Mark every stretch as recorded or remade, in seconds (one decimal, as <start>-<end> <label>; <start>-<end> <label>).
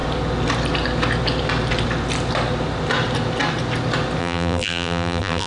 0.0-4.2 recorded; 4.2-5.5 remade